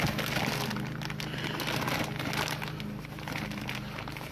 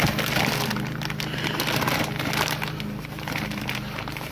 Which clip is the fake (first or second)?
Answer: second